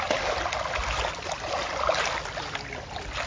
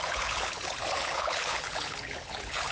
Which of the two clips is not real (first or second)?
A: second